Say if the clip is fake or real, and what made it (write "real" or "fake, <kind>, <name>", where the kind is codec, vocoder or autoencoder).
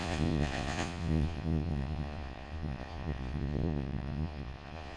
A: fake, vocoder, Vocos